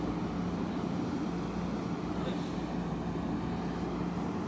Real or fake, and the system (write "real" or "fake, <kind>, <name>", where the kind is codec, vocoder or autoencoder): real